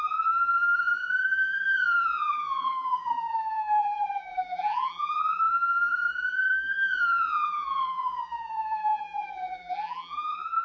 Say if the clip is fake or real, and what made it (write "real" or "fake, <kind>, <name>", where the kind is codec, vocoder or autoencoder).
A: fake, vocoder, BigVGAN v2